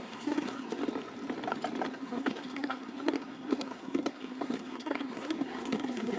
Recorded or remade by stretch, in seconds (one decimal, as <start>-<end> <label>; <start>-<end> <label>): 0.0-0.8 remade; 0.8-1.9 recorded; 1.9-6.2 remade